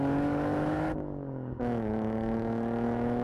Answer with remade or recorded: remade